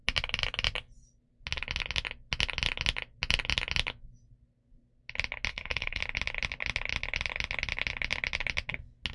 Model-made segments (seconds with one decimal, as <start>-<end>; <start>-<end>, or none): 5.5-6.0